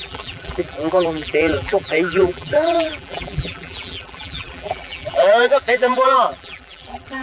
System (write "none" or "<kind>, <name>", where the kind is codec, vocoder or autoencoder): vocoder, BigVGAN v2